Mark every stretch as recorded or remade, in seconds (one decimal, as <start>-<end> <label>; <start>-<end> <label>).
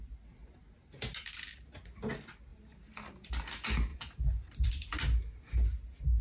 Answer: 0.0-3.9 recorded; 3.9-4.7 remade; 4.7-6.2 recorded